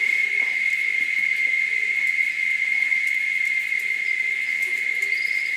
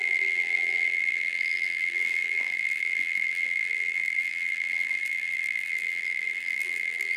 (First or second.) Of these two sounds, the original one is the first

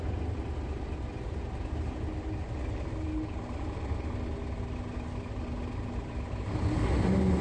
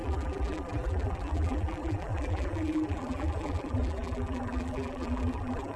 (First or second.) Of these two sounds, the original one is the first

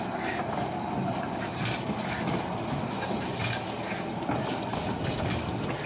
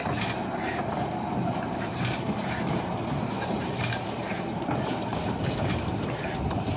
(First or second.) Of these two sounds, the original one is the first